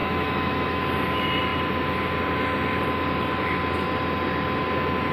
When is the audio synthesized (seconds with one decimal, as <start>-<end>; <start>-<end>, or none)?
0.0-0.8